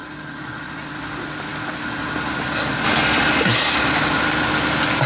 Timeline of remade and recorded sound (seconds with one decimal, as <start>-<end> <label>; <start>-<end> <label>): 0.0-5.1 recorded